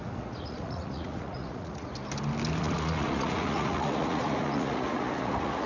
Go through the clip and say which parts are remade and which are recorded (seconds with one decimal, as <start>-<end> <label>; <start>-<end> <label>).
0.0-1.9 remade; 1.9-2.6 recorded; 2.6-5.7 remade

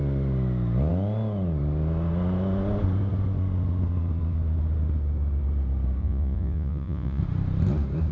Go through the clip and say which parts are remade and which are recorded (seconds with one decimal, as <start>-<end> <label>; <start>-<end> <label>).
0.0-6.0 recorded; 6.0-7.2 remade; 7.2-8.1 recorded

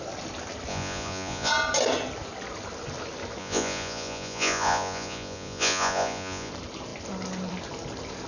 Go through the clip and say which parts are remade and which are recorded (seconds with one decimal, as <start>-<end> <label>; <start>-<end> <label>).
0.0-0.7 recorded; 0.7-1.5 remade; 1.5-3.4 recorded; 3.4-6.5 remade; 6.5-8.3 recorded

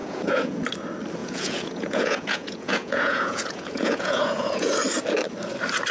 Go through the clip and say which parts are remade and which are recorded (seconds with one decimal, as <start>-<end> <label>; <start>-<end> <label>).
0.0-0.6 remade; 0.6-1.2 recorded; 1.2-4.7 remade; 4.7-5.9 recorded

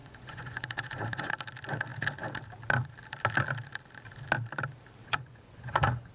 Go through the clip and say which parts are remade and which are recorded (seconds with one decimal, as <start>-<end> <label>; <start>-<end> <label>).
0.0-1.3 remade; 1.3-5.0 recorded; 5.0-6.1 remade